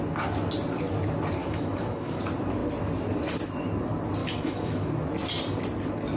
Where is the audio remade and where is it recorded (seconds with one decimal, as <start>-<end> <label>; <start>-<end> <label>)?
0.0-1.4 recorded; 1.4-2.2 remade; 2.2-4.2 recorded; 4.2-4.9 remade; 4.9-6.2 recorded